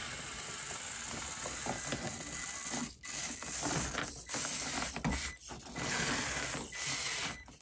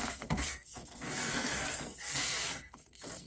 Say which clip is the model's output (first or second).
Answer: second